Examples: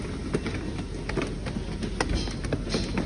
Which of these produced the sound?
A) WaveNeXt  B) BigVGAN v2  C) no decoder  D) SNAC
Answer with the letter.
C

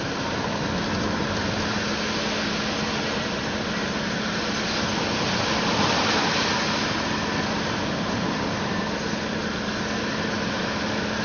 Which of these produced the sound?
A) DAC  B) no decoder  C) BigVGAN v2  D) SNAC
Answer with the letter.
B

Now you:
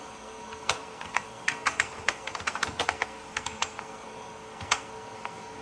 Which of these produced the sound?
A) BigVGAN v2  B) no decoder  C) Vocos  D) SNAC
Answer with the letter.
D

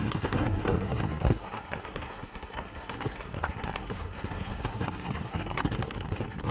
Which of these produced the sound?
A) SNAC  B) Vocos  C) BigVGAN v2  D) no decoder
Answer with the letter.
A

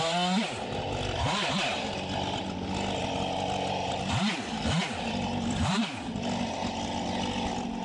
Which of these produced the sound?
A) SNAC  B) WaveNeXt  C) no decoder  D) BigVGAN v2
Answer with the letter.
C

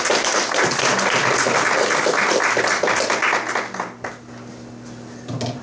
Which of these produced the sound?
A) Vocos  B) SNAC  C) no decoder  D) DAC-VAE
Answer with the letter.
C